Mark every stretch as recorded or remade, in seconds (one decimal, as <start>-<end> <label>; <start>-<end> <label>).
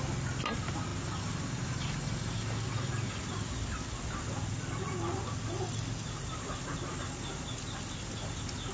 0.0-8.7 recorded